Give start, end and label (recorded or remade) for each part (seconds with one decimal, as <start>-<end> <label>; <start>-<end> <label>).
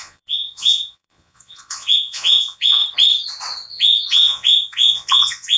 0.0-2.8 remade; 2.8-3.7 recorded; 3.7-5.6 remade